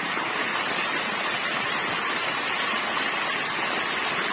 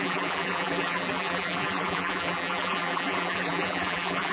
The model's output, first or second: second